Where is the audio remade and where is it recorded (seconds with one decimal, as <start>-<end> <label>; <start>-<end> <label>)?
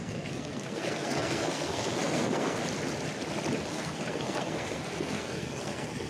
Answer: 0.0-2.6 remade; 2.6-3.7 recorded; 3.7-6.1 remade